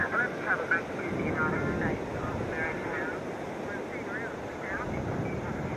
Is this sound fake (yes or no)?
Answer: no